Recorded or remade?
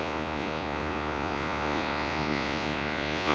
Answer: remade